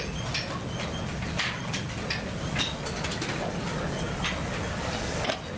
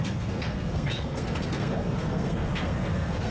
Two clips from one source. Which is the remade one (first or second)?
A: second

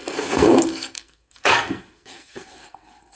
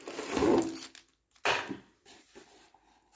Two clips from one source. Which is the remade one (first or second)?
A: first